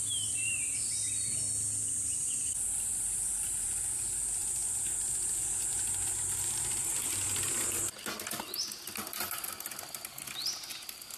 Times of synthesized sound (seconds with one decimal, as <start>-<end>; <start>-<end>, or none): none